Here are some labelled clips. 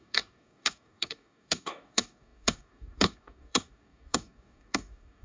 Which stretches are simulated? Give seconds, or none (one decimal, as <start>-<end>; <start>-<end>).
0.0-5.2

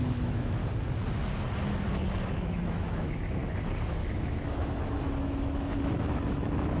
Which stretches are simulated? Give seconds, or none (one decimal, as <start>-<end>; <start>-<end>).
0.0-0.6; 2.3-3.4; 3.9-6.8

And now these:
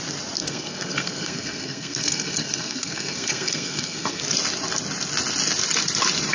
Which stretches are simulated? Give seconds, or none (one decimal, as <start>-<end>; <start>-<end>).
0.4-4.2

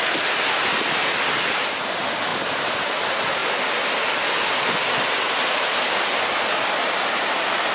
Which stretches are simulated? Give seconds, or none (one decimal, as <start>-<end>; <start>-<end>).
none

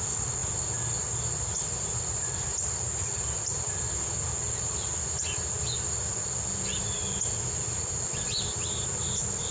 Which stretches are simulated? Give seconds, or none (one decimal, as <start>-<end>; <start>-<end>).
none